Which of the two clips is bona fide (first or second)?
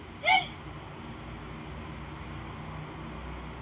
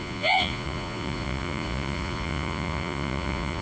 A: first